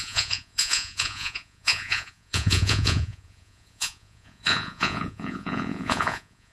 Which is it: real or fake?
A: fake